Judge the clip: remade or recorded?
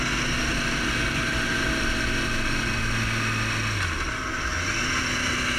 recorded